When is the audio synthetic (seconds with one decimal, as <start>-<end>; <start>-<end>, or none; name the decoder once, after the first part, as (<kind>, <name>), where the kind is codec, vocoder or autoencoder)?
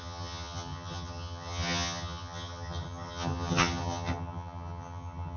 0.0-5.4 (vocoder, HiFi-GAN)